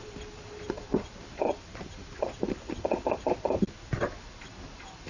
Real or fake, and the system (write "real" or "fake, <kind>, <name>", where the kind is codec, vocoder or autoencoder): fake, vocoder, BigVGAN v2